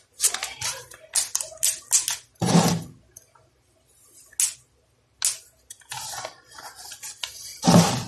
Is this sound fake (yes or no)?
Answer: no